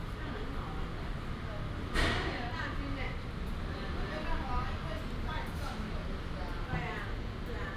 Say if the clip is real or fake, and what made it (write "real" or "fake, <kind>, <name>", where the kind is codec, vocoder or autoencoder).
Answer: real